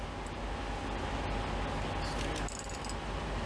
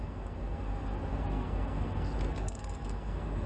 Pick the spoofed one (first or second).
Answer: second